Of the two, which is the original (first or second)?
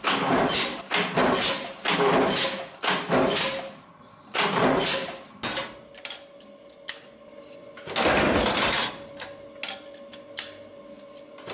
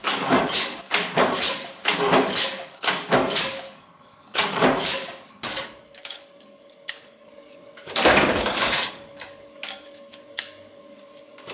first